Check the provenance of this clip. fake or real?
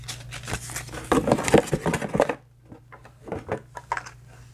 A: real